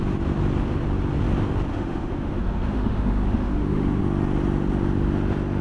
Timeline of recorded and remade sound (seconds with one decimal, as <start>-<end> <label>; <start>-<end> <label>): 0.0-1.7 recorded; 1.7-4.0 remade; 4.0-5.6 recorded